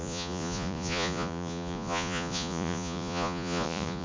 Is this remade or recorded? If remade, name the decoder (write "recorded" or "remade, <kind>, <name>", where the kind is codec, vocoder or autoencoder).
remade, vocoder, Vocos